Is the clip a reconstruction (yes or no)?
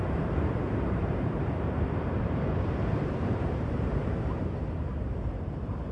yes